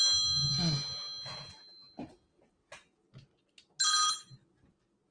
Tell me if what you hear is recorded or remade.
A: recorded